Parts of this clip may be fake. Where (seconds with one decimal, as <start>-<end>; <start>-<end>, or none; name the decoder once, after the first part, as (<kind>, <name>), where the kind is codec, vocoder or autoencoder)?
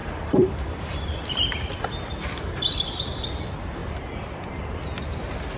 0.0-3.4 (vocoder, BigVGAN v2)